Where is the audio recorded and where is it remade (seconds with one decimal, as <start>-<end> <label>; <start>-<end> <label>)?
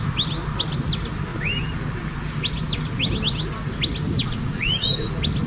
0.0-4.2 recorded; 4.2-5.1 remade; 5.1-5.5 recorded